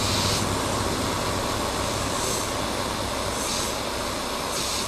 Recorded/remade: recorded